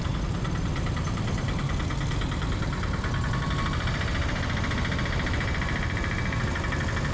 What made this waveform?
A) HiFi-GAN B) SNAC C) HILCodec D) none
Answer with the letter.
D